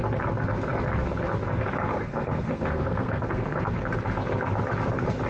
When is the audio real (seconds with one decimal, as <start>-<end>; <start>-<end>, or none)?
0.0-1.9; 3.8-5.3